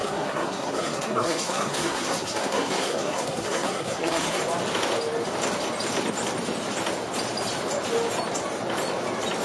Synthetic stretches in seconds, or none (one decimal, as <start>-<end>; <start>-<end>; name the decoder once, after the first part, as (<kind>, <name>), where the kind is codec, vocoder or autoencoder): 0.0-4.4 (codec, SNAC)